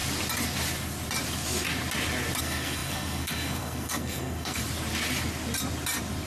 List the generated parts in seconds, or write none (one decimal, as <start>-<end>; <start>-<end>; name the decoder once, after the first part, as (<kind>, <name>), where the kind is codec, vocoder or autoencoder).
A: 2.4-4.6 (codec, SNAC)